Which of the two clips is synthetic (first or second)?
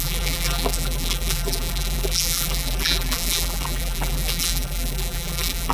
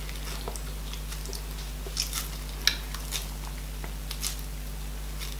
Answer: first